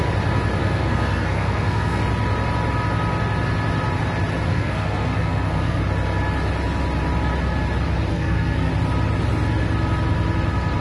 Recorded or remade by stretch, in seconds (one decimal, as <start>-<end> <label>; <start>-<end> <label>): 0.0-0.6 recorded; 0.6-2.0 remade; 2.0-4.5 recorded; 4.5-5.8 remade; 5.8-8.1 recorded; 8.1-8.7 remade; 8.7-10.8 recorded